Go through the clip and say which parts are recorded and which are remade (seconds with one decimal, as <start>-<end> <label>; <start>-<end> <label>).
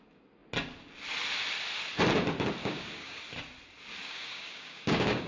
0.0-2.6 recorded; 2.6-3.2 remade; 3.2-4.0 recorded; 4.0-5.3 remade